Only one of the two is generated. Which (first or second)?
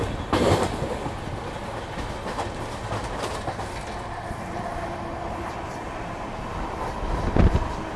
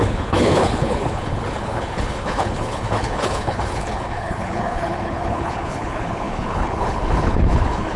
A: second